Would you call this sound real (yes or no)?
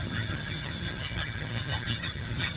no